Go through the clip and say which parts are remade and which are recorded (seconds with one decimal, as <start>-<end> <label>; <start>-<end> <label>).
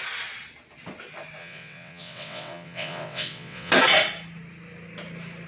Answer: 0.0-1.4 recorded; 1.4-3.7 remade; 3.7-5.5 recorded